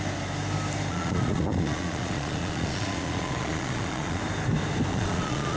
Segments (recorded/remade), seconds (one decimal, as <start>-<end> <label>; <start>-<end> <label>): 0.0-0.9 recorded; 0.9-4.2 remade; 4.2-4.9 recorded; 4.9-5.6 remade